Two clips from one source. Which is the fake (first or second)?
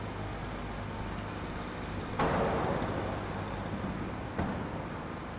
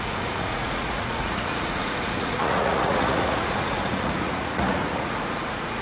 second